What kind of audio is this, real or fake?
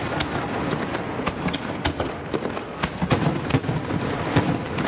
real